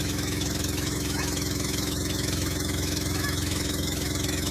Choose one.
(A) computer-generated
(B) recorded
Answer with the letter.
A